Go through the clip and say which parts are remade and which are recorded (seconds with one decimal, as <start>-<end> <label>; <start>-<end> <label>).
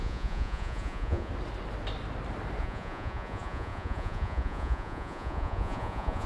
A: 0.0-1.3 remade; 1.3-2.6 recorded; 2.6-6.3 remade